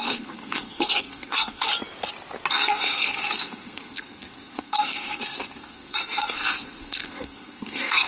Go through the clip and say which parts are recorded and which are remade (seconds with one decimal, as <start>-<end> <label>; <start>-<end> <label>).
0.0-1.7 remade; 1.7-2.5 recorded; 2.5-8.1 remade